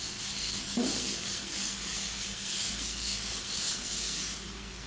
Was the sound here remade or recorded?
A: remade